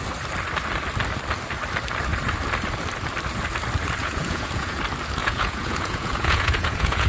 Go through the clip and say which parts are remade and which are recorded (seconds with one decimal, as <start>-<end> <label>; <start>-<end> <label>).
0.0-4.0 recorded; 4.0-4.8 remade; 4.8-5.2 recorded; 5.2-7.1 remade